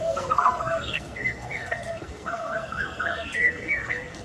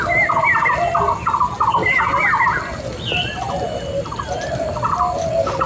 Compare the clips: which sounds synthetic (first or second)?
first